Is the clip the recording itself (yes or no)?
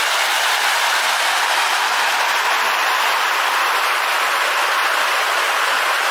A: yes